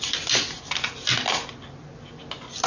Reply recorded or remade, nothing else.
recorded